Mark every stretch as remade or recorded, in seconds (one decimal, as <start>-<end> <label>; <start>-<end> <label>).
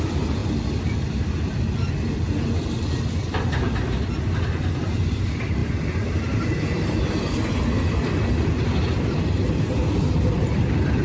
0.0-0.4 remade; 0.4-4.7 recorded; 4.7-5.6 remade; 5.6-10.1 recorded; 10.1-11.0 remade